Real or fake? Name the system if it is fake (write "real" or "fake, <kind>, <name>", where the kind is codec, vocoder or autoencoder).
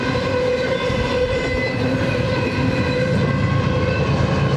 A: real